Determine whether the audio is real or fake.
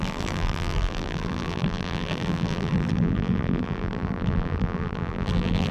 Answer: fake